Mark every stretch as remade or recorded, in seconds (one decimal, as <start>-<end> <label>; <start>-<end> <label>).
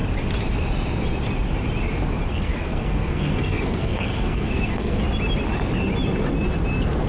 0.0-2.3 recorded; 2.3-5.0 remade; 5.0-7.1 recorded